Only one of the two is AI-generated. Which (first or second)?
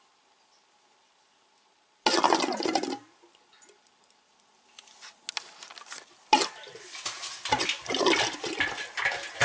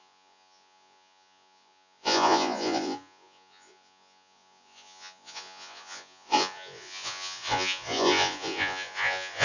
second